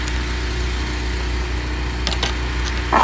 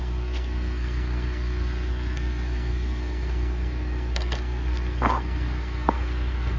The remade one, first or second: second